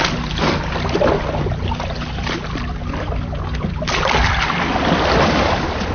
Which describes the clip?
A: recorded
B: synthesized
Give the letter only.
A